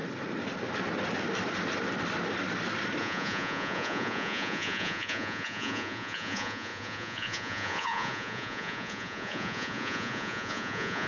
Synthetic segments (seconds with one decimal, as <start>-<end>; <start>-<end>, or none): 3.0-11.1